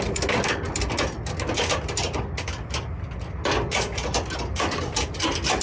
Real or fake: real